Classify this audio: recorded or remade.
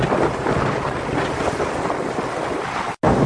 recorded